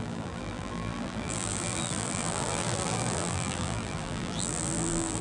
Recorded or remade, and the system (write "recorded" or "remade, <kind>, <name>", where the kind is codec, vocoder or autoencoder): remade, vocoder, BigVGAN v2